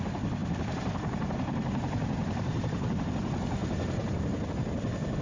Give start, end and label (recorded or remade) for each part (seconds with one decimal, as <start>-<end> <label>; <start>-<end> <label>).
0.0-0.4 recorded; 0.4-3.1 remade; 3.1-3.6 recorded; 3.6-4.5 remade; 4.5-5.2 recorded